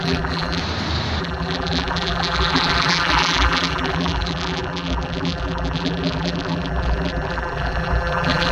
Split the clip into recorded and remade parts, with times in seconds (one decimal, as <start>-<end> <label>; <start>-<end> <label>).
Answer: 0.0-0.6 remade; 0.6-1.2 recorded; 1.2-8.5 remade